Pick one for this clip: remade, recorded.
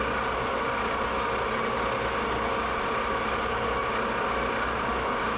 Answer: recorded